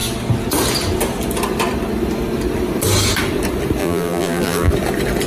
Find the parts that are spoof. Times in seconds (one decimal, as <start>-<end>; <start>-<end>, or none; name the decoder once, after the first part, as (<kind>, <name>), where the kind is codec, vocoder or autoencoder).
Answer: 3.8-4.7 (vocoder, BigVGAN v2)